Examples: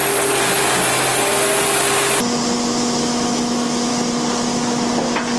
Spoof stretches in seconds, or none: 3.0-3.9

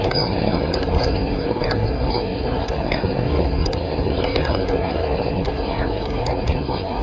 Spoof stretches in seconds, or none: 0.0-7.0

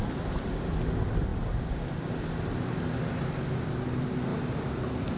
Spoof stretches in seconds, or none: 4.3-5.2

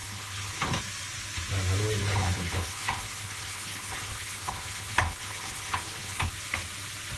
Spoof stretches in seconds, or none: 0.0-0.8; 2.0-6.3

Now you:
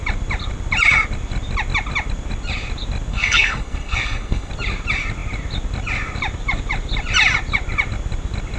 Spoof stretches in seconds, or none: 3.1-4.5

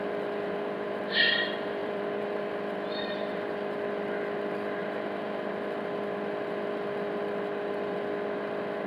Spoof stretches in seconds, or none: 1.8-2.5; 4.8-5.5